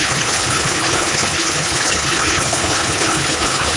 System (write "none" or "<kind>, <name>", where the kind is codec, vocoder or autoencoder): codec, HILCodec